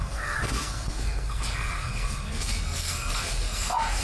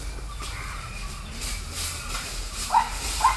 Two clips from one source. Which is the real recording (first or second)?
second